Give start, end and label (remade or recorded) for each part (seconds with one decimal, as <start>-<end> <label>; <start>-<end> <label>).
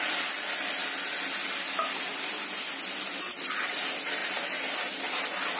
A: 0.0-4.2 recorded; 4.2-5.0 remade; 5.0-5.6 recorded